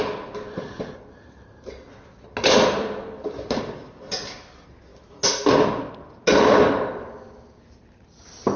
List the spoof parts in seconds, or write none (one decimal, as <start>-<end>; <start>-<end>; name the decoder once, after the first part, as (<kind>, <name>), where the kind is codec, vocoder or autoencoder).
none